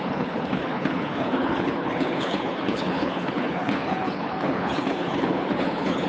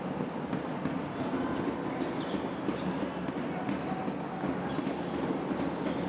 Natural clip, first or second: second